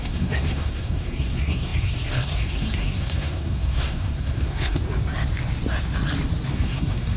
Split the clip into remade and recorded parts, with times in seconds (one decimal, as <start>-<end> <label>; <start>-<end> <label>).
0.0-4.8 remade; 4.8-6.5 recorded; 6.5-7.2 remade